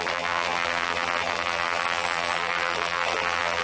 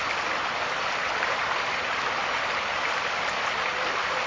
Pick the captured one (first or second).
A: second